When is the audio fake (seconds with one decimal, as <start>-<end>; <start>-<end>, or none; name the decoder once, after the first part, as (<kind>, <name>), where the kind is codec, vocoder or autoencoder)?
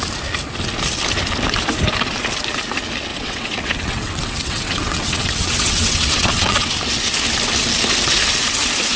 3.1-6.7 (vocoder, WaveNeXt)